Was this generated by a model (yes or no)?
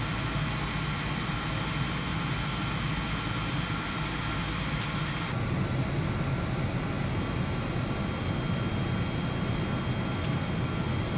no